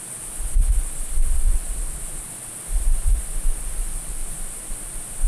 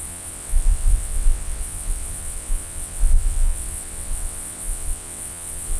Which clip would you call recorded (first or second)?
first